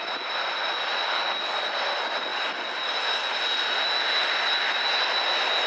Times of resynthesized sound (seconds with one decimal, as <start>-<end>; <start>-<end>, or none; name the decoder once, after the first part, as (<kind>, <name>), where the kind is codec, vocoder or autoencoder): none